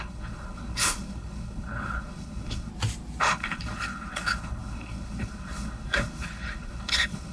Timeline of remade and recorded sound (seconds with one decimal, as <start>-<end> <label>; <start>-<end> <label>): 0.0-2.7 remade; 2.7-3.2 recorded; 3.2-7.3 remade